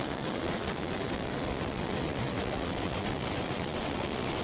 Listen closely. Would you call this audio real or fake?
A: fake